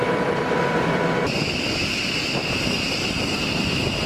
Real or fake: real